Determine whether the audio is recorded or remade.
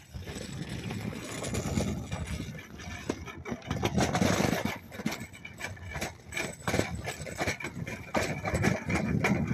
recorded